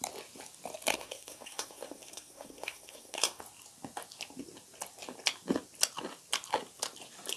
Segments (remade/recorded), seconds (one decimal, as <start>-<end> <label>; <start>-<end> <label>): 0.0-0.9 recorded; 0.9-3.4 remade; 3.4-7.4 recorded